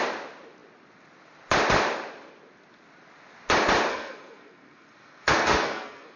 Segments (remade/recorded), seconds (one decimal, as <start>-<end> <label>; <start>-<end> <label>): 0.0-3.9 recorded; 3.9-6.2 remade